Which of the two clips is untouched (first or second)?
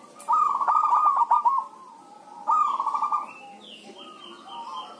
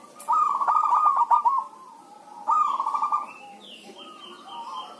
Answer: first